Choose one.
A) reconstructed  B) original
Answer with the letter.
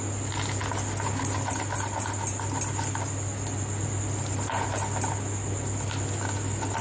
B